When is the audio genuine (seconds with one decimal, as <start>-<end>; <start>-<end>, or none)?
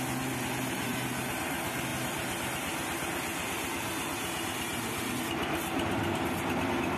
0.0-7.0